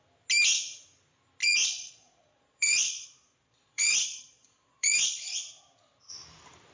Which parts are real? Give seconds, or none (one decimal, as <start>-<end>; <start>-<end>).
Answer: 0.0-1.4; 5.4-6.7